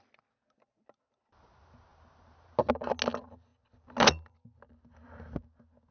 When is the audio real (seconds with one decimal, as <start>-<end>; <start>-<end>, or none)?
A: 0.0-5.9